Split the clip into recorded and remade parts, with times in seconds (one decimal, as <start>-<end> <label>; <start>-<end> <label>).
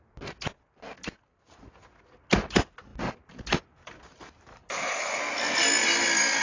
0.0-4.5 recorded; 4.5-5.2 remade; 5.2-6.4 recorded